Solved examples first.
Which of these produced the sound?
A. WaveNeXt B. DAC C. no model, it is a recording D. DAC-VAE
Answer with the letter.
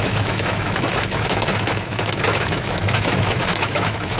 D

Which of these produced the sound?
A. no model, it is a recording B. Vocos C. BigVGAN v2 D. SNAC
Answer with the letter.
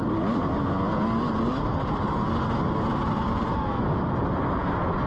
A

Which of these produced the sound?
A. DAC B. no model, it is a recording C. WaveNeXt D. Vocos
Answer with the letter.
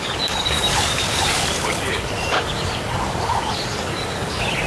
A